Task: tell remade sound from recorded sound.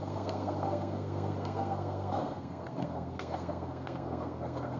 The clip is remade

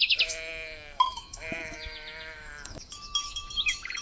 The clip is remade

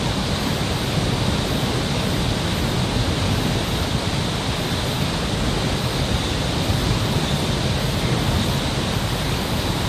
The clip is recorded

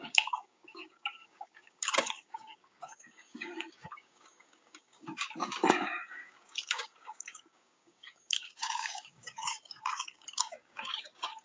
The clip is remade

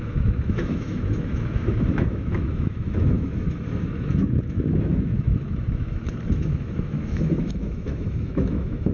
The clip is remade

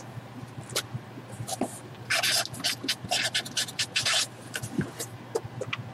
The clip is recorded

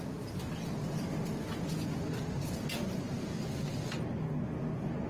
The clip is recorded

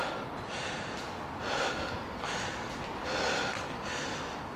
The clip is recorded